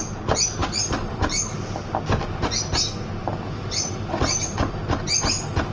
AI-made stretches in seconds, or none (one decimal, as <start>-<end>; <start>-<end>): 0.6-2.0; 3.2-4.8